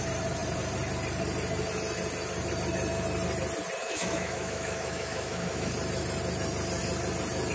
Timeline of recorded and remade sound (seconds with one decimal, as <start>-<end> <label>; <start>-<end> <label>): 0.0-3.8 recorded; 3.8-5.7 remade; 5.7-7.5 recorded